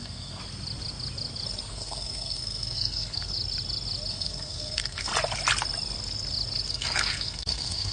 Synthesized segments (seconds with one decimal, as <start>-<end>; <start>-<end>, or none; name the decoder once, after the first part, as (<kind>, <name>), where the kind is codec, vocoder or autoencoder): 0.0-0.4 (codec, SNAC); 1.7-3.3; 4.1-5.1; 6.7-7.9